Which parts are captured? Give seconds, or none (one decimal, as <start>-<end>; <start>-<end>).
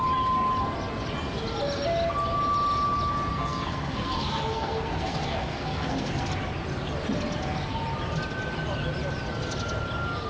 0.0-3.3; 6.3-10.3